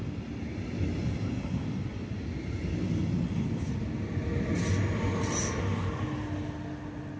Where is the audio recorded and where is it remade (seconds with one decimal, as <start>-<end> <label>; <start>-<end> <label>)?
0.0-7.2 recorded